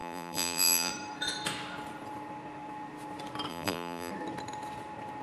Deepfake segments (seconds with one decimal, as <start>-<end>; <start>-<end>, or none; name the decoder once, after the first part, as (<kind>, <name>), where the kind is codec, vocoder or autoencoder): 0.0-0.9 (vocoder, BigVGAN v2); 3.5-4.1